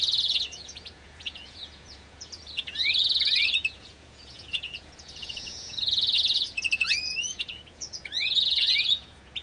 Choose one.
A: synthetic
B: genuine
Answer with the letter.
A